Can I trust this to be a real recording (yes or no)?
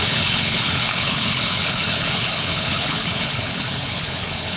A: no